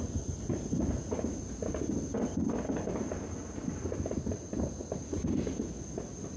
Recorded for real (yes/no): yes